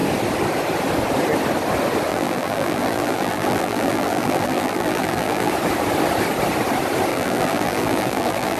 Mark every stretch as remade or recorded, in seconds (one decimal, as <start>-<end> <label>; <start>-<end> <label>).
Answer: 0.0-2.1 recorded; 2.1-5.5 remade; 5.5-7.1 recorded; 7.1-8.6 remade